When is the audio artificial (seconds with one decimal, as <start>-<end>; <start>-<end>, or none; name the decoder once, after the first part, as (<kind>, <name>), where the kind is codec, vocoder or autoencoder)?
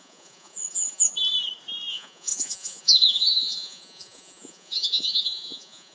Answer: 0.0-1.1 (vocoder, Vocos); 1.9-5.9